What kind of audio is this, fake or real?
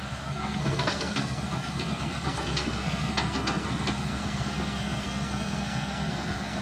fake